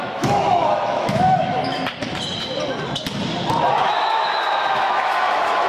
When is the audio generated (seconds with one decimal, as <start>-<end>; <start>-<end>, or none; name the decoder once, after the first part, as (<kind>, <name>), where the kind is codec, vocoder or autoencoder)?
0.0-1.7 (autoencoder, DAC-VAE); 4.0-5.7